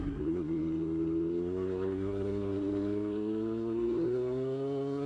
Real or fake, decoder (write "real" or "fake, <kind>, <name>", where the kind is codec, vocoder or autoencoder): fake, codec, SNAC